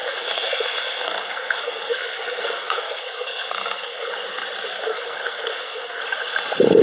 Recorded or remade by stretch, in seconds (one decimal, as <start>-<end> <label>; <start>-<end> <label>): 0.0-4.1 remade; 4.1-4.7 recorded; 4.7-6.0 remade; 6.0-6.8 recorded